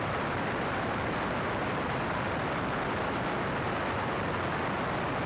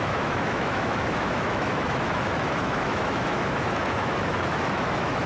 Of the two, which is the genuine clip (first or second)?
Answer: first